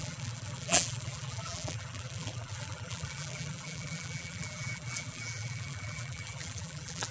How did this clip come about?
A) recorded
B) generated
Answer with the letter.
B